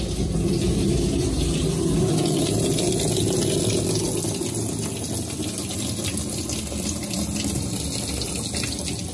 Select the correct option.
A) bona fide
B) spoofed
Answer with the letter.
A